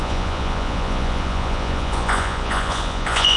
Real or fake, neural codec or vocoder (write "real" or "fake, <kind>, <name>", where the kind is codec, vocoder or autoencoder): fake, vocoder, Vocos